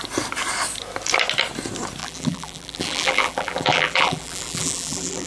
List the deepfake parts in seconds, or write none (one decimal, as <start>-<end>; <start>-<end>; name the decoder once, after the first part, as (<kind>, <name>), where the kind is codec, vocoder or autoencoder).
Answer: 2.0-5.3 (vocoder, BigVGAN v2)